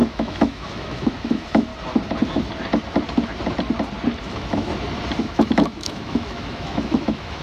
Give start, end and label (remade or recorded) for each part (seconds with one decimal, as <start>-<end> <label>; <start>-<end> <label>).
0.0-1.7 remade; 1.7-4.2 recorded; 4.2-4.7 remade; 4.7-5.2 recorded; 5.2-7.4 remade